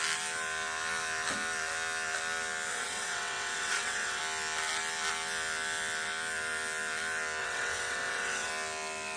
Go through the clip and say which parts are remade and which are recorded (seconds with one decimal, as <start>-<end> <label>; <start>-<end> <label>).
0.0-2.7 recorded; 2.7-4.2 remade; 4.2-7.4 recorded; 7.4-8.5 remade; 8.5-9.2 recorded